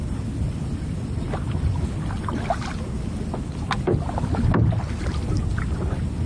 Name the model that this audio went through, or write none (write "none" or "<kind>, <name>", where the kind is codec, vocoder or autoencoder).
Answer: none